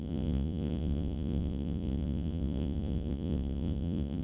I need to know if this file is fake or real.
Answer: fake